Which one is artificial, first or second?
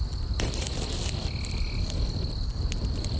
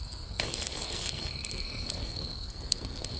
second